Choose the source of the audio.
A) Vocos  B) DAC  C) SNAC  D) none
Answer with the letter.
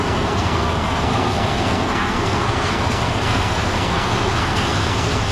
C